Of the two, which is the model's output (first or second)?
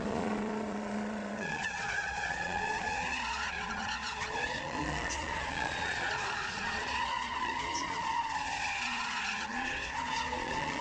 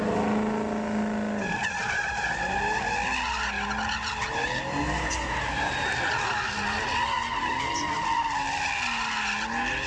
first